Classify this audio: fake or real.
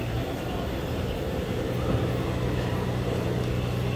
real